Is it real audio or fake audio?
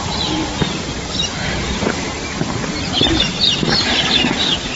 real